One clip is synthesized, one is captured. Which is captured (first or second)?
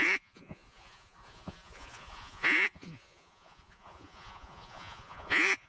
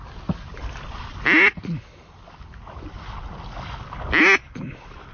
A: second